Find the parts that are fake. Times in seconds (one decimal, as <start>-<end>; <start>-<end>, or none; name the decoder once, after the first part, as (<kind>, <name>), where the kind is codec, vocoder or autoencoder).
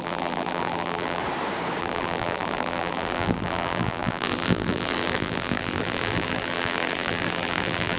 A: 0.0-1.2 (vocoder, BigVGAN v2); 1.8-8.0